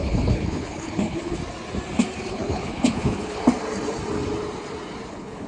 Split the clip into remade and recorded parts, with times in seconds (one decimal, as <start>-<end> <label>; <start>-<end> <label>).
0.0-1.4 remade; 1.4-2.3 recorded; 2.3-3.4 remade; 3.4-5.1 recorded; 5.1-5.5 remade